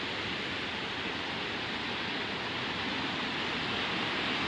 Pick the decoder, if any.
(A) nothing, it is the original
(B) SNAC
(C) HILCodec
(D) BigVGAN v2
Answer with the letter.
A